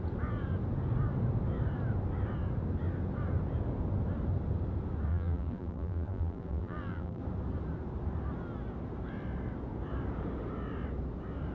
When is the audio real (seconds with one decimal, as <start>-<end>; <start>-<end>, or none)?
0.0-5.1; 7.2-11.5